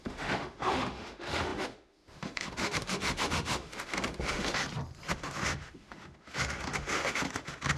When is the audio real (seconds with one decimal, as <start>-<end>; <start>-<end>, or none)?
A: 4.6-5.1